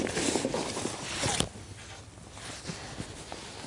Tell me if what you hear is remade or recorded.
recorded